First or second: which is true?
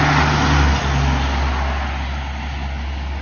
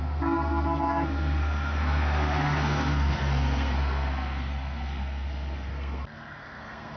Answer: first